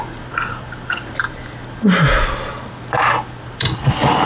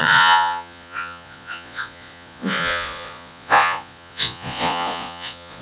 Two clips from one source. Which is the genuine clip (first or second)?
first